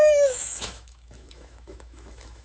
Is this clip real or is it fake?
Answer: fake